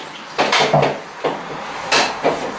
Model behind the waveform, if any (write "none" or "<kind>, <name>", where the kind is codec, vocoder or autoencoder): none